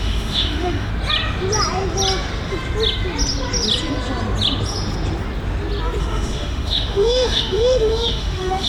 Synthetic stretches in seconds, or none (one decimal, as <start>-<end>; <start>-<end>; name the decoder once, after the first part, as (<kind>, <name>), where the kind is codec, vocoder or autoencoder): 0.0-0.9 (autoencoder, DAC-VAE); 6.0-8.7